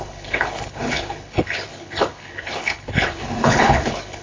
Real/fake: fake